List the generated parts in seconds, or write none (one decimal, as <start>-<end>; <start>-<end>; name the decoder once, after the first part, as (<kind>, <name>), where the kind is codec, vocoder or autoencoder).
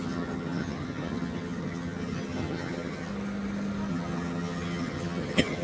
0.0-3.1 (vocoder, HiFi-GAN); 3.9-5.6